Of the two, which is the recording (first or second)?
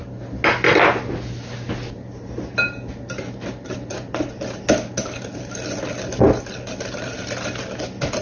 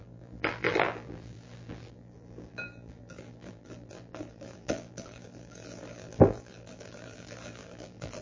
first